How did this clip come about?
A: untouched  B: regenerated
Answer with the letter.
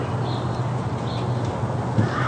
A